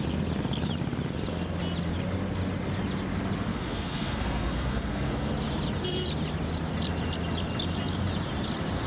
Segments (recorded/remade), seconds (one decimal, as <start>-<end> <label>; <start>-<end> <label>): 0.0-3.5 recorded; 3.5-5.3 remade; 5.3-8.9 recorded